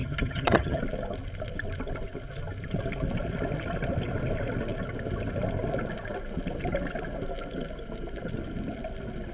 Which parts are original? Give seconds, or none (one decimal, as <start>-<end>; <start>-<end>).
0.8-9.3